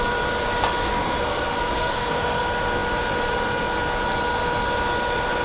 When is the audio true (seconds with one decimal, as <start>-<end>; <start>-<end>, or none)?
0.0-0.9; 2.4-5.4